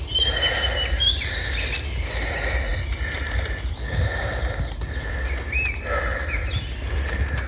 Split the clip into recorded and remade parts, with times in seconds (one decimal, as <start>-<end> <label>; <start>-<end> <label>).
0.0-7.5 recorded